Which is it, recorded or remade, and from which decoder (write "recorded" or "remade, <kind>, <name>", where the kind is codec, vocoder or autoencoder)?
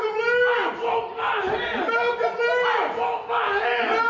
recorded